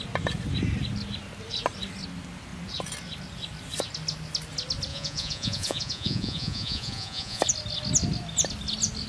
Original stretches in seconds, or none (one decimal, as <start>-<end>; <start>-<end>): 0.0-4.9; 7.4-9.1